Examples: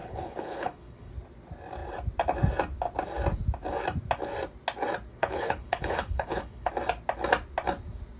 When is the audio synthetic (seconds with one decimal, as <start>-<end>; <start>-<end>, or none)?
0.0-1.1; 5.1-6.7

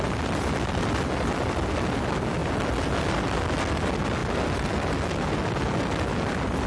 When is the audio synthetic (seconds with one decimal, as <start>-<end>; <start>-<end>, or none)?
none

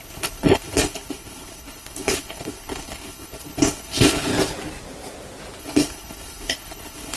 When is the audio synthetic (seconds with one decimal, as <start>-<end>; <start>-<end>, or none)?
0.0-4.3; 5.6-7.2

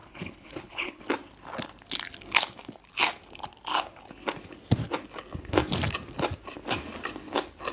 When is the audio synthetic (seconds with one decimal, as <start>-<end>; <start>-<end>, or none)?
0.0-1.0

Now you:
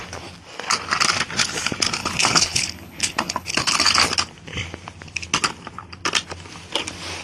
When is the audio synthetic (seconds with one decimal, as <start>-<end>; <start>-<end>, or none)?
2.0-3.8

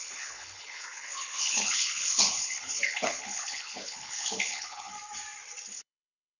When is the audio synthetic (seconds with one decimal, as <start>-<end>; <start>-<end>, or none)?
0.0-4.9; 5.7-6.4

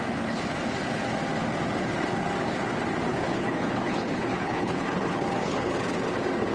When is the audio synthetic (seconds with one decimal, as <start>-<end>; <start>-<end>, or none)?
3.1-5.8